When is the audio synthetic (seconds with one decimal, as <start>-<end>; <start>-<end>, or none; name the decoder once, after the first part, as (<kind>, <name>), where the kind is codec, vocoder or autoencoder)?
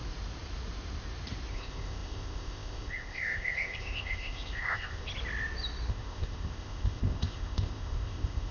1.5-5.1 (codec, ZipCodec); 5.9-8.5